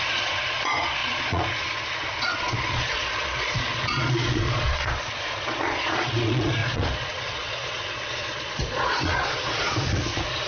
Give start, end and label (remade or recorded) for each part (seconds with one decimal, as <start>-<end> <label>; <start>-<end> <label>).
0.0-10.5 remade